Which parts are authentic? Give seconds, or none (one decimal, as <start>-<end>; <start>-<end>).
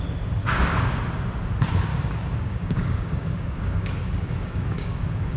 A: 0.0-0.4; 1.0-1.9